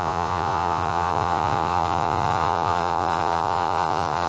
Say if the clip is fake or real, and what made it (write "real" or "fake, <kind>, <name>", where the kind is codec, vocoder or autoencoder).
fake, vocoder, Vocos